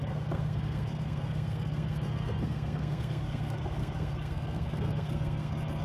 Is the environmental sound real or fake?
fake